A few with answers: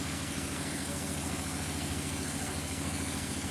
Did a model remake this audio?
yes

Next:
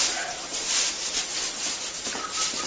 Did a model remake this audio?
yes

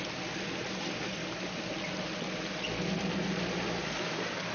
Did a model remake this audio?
no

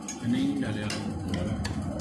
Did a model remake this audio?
no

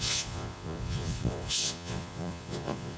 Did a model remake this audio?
yes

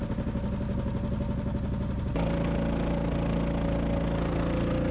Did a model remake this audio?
no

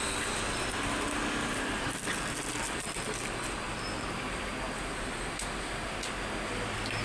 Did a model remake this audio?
no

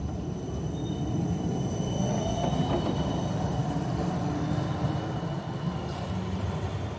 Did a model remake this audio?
no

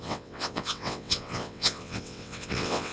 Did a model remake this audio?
yes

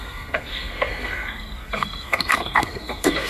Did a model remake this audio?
yes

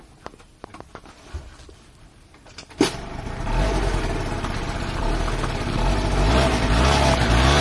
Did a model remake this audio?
no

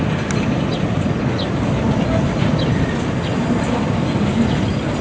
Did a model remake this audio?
no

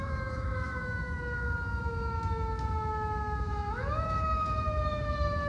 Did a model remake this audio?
yes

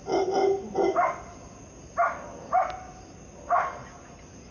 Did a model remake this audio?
no